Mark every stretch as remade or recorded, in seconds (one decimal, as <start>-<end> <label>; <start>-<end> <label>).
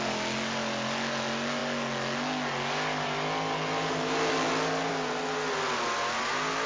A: 0.0-6.7 recorded